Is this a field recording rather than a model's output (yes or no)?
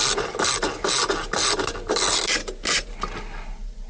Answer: yes